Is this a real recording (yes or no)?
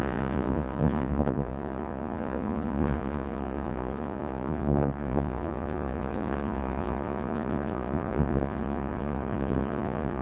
no